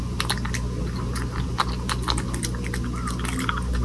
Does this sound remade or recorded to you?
recorded